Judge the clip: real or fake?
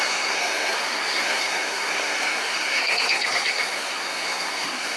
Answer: fake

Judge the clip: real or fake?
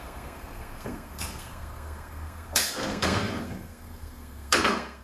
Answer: fake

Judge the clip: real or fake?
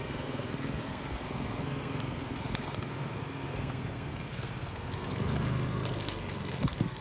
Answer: fake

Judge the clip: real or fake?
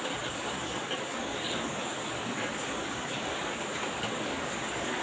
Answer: fake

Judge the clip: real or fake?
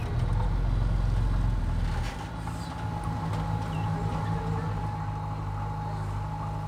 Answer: real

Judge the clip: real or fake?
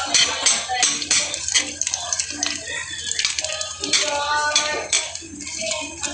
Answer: real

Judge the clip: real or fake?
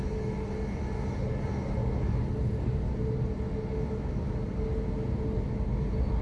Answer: real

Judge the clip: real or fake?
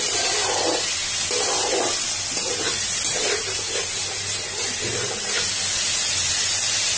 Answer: real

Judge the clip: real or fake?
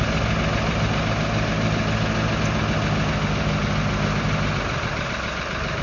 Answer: real